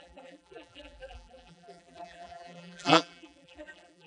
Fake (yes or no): yes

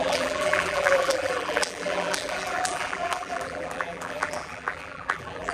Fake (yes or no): yes